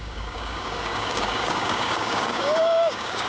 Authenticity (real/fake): fake